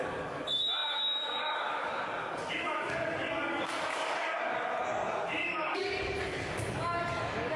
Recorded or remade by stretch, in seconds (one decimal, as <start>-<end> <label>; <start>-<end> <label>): 0.0-7.6 remade